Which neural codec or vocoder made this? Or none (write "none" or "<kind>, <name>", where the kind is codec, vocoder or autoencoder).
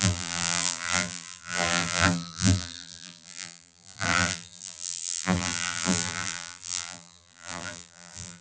vocoder, BigVGAN v2